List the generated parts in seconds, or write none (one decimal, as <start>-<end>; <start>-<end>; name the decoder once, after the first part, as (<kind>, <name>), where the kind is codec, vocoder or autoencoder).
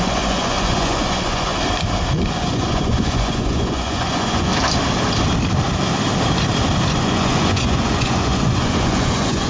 0.0-1.5 (vocoder, Vocos); 2.3-4.5; 6.9-9.5